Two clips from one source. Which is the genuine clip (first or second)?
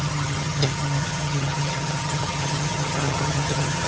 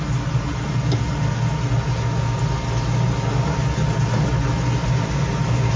second